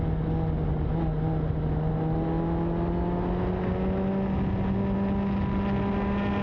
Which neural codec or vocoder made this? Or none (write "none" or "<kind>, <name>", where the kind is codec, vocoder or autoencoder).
none